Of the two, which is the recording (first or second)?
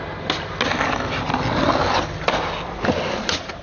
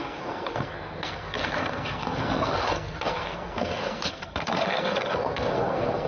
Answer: first